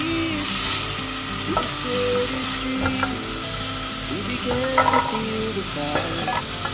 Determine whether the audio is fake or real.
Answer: real